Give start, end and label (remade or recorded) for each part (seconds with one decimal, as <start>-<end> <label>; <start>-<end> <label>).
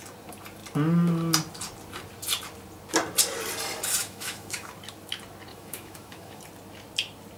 0.0-4.0 recorded; 4.0-4.7 remade; 4.7-5.5 recorded; 5.5-6.4 remade; 6.4-7.4 recorded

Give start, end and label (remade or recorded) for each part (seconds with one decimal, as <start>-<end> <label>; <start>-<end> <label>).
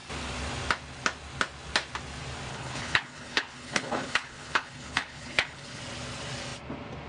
0.0-2.5 recorded; 2.5-5.8 remade; 5.8-7.1 recorded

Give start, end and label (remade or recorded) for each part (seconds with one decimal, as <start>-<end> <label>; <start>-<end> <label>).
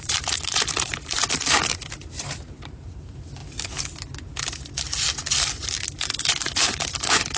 0.0-3.4 remade; 3.4-6.0 recorded; 6.0-7.4 remade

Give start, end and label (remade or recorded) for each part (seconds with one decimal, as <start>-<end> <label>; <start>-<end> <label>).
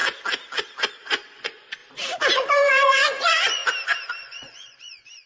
0.0-0.8 recorded; 0.8-1.8 remade; 1.8-2.5 recorded; 2.5-3.6 remade; 3.6-4.2 recorded; 4.2-5.3 remade